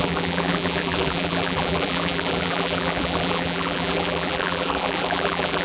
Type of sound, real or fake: fake